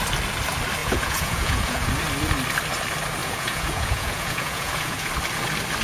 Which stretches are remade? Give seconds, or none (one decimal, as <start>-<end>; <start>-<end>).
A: 0.8-1.9; 3.2-5.1